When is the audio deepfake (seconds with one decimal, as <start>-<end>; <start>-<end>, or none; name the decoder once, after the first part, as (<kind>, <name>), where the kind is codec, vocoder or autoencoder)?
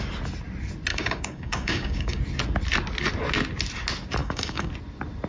0.9-2.2 (codec, DAC); 4.2-4.7